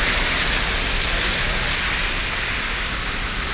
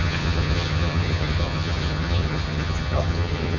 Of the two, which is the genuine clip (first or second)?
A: first